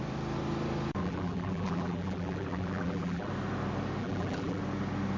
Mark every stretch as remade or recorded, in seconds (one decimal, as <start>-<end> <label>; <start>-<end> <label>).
0.0-1.0 recorded; 1.0-3.3 remade; 3.3-4.0 recorded; 4.0-4.6 remade; 4.6-5.2 recorded

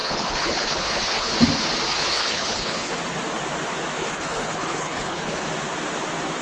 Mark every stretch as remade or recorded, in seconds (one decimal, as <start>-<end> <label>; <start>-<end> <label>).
0.0-1.3 remade; 1.3-1.9 recorded; 1.9-2.9 remade; 2.9-4.0 recorded; 4.0-5.5 remade; 5.5-6.4 recorded

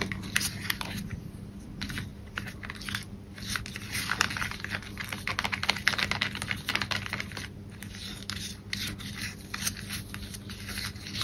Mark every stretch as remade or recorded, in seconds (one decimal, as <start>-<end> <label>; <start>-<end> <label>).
0.0-11.2 recorded